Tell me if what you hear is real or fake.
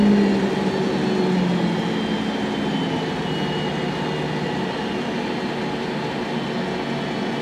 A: real